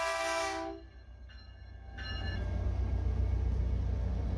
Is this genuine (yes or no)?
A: yes